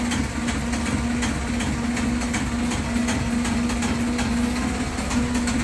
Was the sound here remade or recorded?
recorded